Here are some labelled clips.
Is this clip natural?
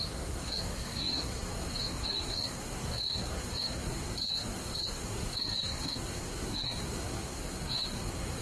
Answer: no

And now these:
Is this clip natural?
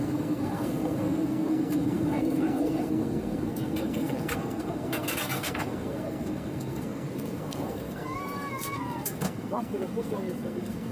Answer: no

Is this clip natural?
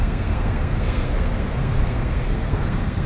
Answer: no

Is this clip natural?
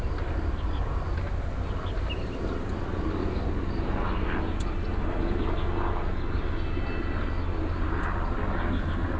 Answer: yes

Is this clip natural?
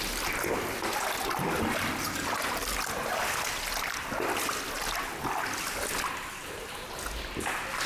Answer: yes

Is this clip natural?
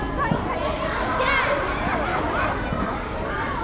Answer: yes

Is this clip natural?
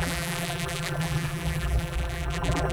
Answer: no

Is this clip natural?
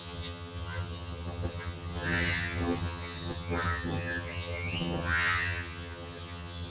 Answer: no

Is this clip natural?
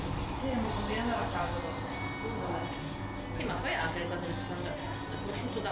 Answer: yes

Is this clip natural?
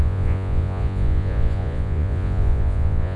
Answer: no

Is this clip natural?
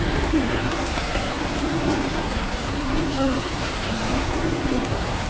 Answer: no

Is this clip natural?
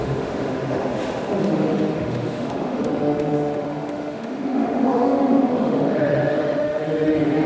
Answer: no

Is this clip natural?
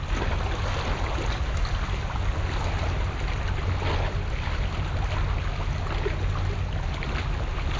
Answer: yes